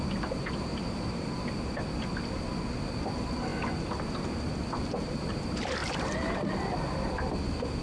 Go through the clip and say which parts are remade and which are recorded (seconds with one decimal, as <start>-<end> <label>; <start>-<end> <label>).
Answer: 0.0-0.7 recorded; 0.7-1.3 remade; 1.3-5.8 recorded; 5.8-6.5 remade; 6.5-7.8 recorded